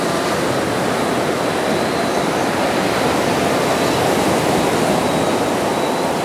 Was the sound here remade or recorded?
recorded